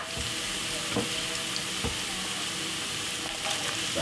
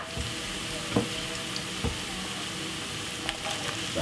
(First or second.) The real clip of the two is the second